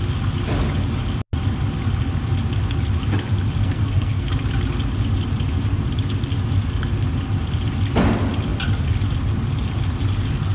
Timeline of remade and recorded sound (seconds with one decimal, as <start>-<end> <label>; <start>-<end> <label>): 0.0-3.6 recorded; 3.6-4.3 remade; 4.3-10.5 recorded